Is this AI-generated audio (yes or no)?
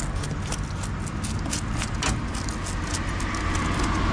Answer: no